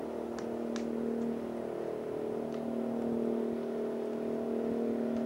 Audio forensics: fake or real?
real